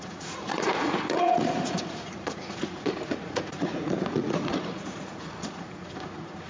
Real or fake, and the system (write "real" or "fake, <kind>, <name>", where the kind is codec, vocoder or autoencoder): fake, vocoder, Vocos